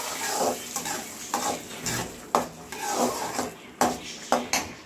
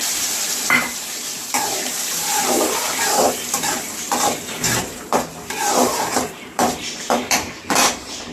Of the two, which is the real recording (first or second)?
first